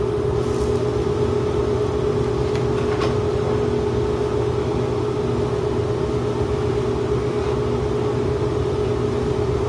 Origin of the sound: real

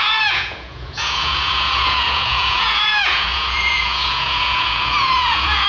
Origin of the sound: fake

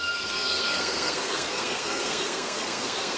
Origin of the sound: fake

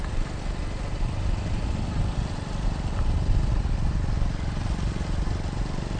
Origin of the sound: real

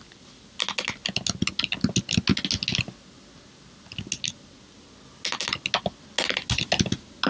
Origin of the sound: real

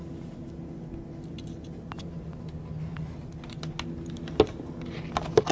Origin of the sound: real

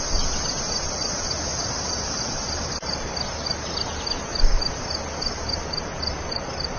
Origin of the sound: real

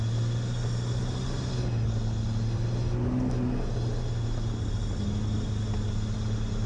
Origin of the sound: real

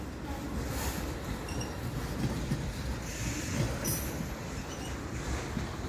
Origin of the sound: real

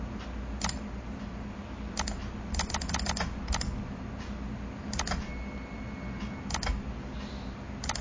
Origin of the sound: real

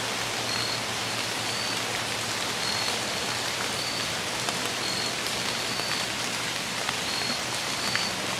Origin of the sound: real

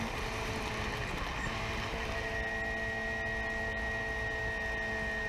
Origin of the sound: real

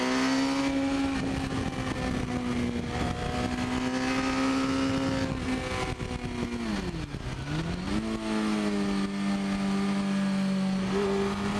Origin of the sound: real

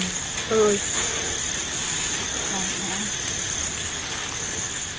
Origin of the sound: real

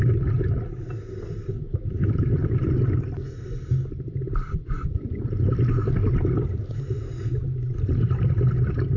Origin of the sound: real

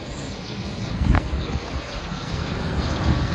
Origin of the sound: fake